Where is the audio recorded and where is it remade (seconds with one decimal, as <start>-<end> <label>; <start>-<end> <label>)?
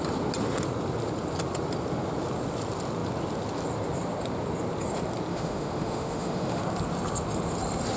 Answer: 0.0-5.3 recorded; 5.3-6.6 remade; 6.6-8.0 recorded